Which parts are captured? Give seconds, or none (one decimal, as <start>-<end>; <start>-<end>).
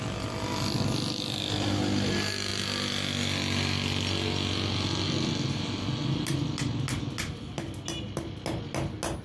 0.0-9.2